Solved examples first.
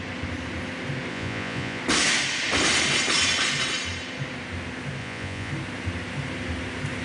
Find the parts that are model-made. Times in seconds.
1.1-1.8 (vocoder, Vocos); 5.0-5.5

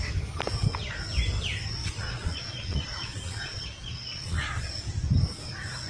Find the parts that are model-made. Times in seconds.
1.8-4.7 (vocoder, Vocos)

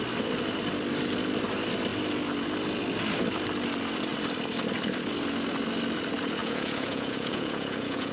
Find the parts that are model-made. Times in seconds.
6.4-8.1 (vocoder, Vocos)

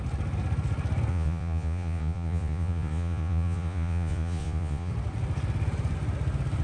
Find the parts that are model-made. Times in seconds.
1.1-4.9 (vocoder, Vocos)

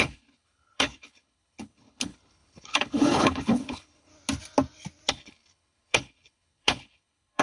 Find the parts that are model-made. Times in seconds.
0.0-4.1 (codec, HILCodec); 5.1-7.4

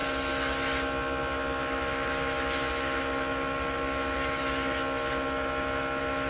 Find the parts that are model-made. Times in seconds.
none

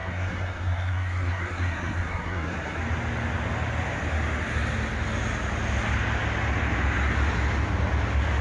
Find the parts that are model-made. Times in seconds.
0.0-2.8 (codec, SNAC)

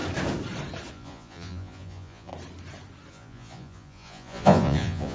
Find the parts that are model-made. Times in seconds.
0.9-2.3 (vocoder, Vocos); 3.1-5.1